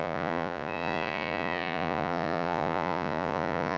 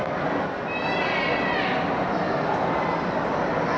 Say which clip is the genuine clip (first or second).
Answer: second